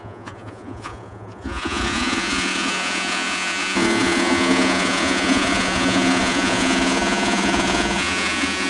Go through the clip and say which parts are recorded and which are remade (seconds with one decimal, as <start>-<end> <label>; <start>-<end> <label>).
0.0-8.7 remade